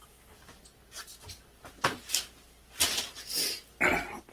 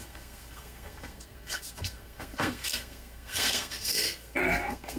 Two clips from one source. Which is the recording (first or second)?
first